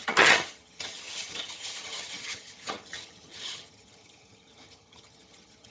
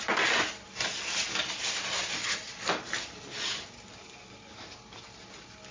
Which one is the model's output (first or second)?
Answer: first